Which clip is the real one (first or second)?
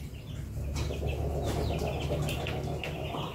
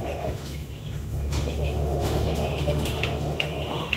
first